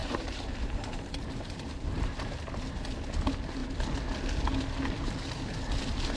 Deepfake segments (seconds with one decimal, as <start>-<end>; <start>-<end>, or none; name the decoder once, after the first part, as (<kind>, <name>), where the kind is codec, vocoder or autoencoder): 0.0-2.8 (vocoder, BigVGAN v2)